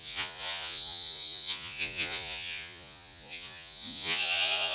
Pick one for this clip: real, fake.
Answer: fake